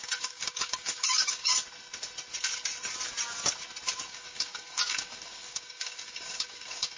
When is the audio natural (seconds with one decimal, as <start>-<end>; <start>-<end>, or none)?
1.5-4.1